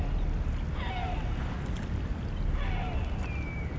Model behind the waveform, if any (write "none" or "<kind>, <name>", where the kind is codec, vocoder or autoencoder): none